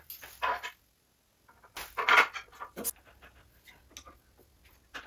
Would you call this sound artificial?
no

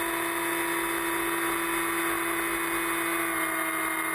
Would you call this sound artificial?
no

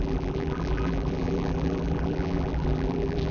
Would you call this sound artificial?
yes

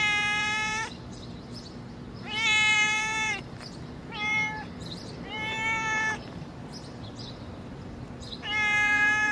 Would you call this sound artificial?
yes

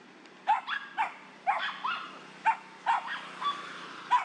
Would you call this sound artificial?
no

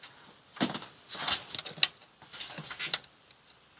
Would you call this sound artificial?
no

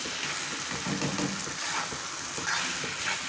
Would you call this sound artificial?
no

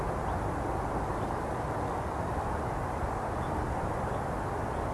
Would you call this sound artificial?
no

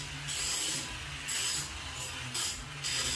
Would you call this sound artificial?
no